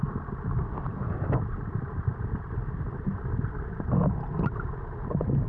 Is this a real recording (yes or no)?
yes